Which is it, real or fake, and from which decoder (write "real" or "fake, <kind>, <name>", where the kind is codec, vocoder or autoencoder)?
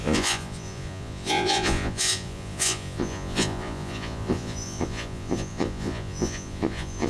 fake, vocoder, Vocos